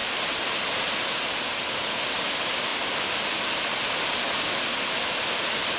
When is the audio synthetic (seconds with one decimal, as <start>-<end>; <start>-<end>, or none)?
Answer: none